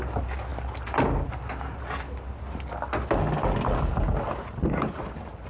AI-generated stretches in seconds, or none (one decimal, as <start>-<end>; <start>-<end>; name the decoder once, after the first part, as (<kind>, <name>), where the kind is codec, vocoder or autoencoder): none